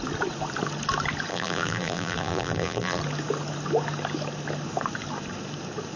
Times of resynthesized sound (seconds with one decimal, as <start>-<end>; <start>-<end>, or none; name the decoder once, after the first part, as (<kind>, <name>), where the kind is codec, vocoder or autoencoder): 1.3-3.0 (vocoder, BigVGAN v2)